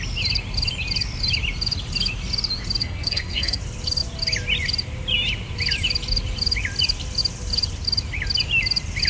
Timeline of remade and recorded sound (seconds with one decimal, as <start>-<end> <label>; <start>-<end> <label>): 0.0-2.8 recorded; 2.8-3.6 remade; 3.6-9.1 recorded